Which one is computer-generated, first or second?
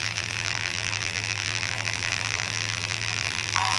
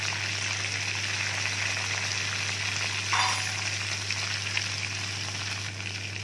first